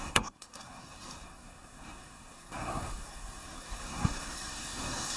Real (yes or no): no